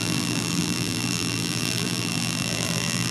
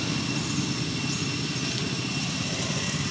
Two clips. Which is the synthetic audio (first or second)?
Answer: first